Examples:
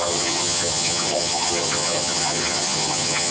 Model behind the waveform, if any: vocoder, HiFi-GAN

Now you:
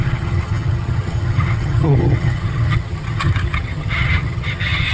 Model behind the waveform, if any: vocoder, HiFi-GAN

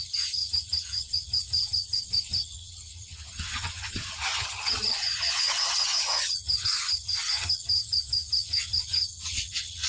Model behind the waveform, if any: vocoder, HiFi-GAN